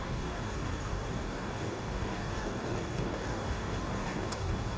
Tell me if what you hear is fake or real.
fake